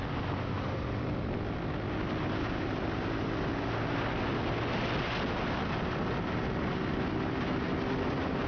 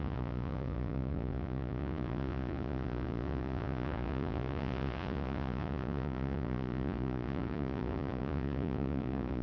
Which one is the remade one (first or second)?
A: second